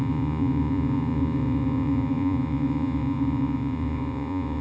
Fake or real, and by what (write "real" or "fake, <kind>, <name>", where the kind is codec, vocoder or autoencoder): fake, vocoder, Vocos